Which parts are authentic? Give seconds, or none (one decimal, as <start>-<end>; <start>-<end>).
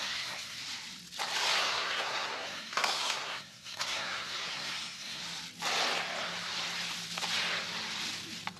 0.6-1.6; 5.2-8.6